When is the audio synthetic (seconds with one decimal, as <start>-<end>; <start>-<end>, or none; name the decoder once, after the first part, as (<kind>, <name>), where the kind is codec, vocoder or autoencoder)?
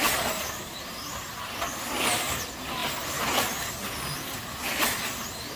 none